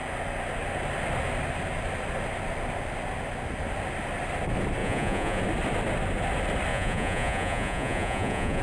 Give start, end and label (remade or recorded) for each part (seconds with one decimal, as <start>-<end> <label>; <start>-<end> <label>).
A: 0.0-4.8 recorded; 4.8-5.4 remade; 5.4-6.7 recorded; 6.7-8.6 remade